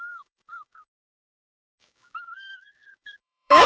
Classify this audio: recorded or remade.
remade